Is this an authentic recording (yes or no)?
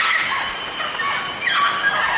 yes